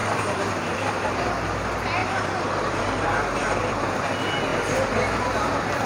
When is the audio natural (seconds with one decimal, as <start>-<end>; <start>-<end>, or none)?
1.3-2.0; 3.7-5.9

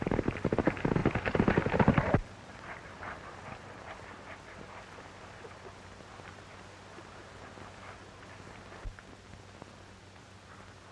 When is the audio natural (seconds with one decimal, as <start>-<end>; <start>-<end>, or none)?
0.0-1.0; 3.9-10.9

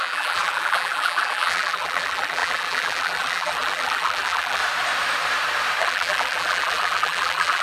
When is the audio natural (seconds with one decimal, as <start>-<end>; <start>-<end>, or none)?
4.6-5.8

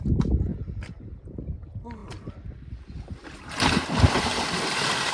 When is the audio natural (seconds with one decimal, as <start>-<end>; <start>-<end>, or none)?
0.0-0.5; 1.2-2.0

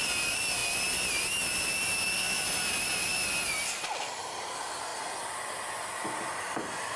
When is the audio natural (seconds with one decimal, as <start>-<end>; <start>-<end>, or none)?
0.6-1.5; 4.9-6.4

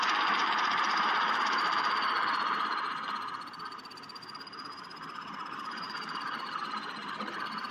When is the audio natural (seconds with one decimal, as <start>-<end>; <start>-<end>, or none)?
none

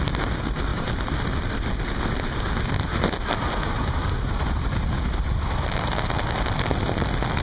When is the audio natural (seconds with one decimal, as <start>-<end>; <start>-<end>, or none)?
0.0-0.7; 2.7-7.4